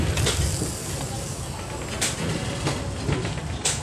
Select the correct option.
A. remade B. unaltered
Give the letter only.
B